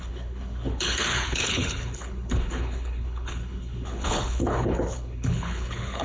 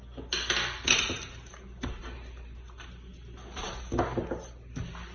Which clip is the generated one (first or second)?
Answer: first